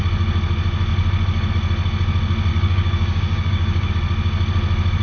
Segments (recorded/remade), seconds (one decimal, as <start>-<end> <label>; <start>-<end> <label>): 0.0-2.5 recorded; 2.5-3.9 remade; 3.9-5.0 recorded